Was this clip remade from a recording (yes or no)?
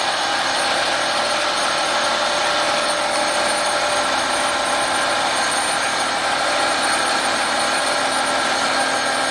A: no